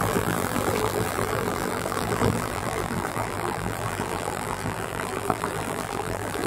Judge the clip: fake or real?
fake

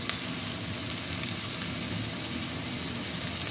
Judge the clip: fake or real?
real